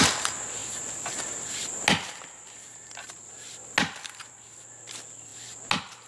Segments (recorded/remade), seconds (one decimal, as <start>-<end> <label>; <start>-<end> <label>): 0.0-6.1 recorded